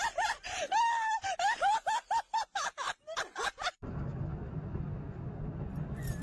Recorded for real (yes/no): yes